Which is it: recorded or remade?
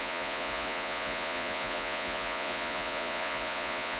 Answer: remade